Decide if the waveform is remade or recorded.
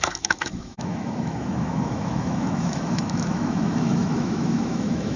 remade